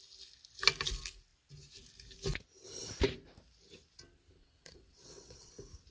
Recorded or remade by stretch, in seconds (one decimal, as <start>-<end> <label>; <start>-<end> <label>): 0.0-4.4 recorded; 4.4-5.5 remade; 5.5-5.9 recorded